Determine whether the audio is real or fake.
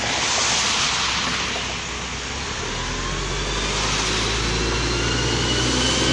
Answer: real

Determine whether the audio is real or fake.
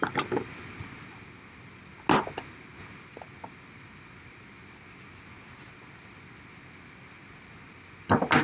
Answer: real